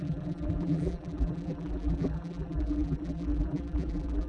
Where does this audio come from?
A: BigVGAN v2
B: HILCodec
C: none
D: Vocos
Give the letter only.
A